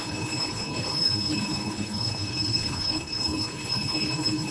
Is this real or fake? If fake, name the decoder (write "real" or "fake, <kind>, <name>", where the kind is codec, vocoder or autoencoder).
fake, codec, HILCodec